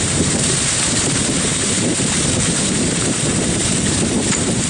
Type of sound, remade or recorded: remade